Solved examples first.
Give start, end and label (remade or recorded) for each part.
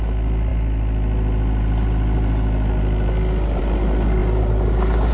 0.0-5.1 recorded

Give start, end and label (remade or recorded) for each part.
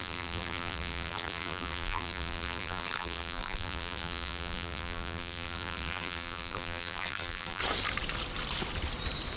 0.0-7.6 remade; 7.6-9.4 recorded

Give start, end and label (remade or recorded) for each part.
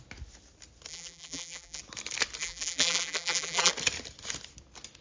0.0-0.9 recorded; 0.9-1.8 remade; 1.8-2.4 recorded; 2.4-3.7 remade; 3.7-5.0 recorded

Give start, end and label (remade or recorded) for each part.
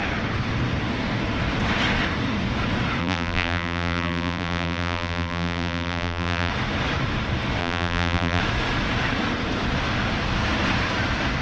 0.0-3.0 recorded; 3.0-6.5 remade; 6.5-7.6 recorded; 7.6-8.4 remade; 8.4-11.4 recorded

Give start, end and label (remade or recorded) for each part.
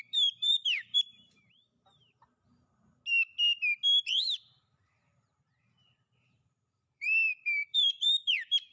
0.0-1.6 remade; 1.6-4.0 recorded; 4.0-8.7 remade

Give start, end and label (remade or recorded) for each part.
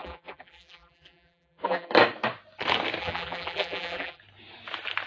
0.0-1.9 remade; 1.9-3.0 recorded; 3.0-4.2 remade; 4.2-5.1 recorded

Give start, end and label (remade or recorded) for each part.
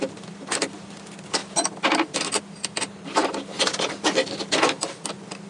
0.0-5.5 recorded